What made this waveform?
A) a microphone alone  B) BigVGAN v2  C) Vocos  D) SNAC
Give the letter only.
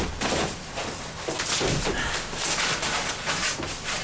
A